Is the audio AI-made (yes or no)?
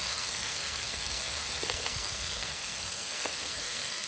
yes